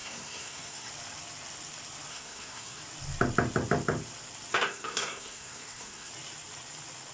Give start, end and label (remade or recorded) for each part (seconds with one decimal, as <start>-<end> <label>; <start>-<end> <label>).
0.0-0.9 remade; 0.9-2.1 recorded; 2.1-2.8 remade; 2.8-4.5 recorded; 4.5-6.1 remade; 6.1-7.1 recorded